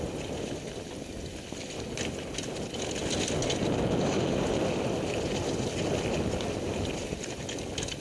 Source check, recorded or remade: recorded